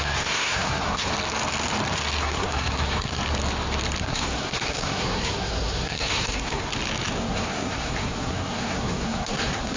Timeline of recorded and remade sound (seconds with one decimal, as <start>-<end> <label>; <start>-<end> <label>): 0.0-1.1 remade; 1.1-2.2 recorded; 2.2-3.2 remade; 3.2-4.0 recorded; 4.0-6.7 remade; 6.7-7.2 recorded; 7.2-9.8 remade